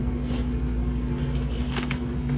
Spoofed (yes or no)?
yes